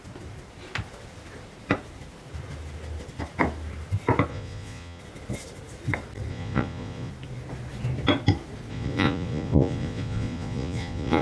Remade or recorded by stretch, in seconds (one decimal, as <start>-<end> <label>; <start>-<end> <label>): 0.0-4.3 recorded; 4.3-5.0 remade; 5.0-6.3 recorded; 6.3-7.1 remade; 7.1-8.7 recorded; 8.7-11.2 remade